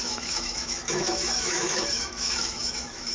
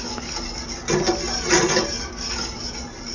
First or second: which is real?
second